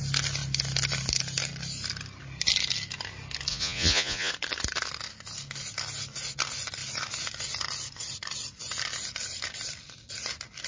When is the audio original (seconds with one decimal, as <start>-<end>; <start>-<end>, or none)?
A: 0.0-3.5; 4.3-10.7